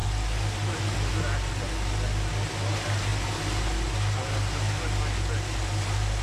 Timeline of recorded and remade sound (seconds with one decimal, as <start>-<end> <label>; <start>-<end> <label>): 0.0-6.2 recorded